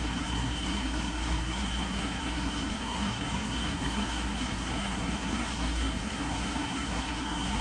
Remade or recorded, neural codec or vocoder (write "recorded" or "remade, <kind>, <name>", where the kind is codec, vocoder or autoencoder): remade, codec, SNAC